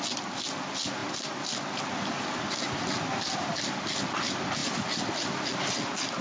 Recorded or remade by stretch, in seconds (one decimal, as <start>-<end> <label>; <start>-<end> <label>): 0.0-6.2 recorded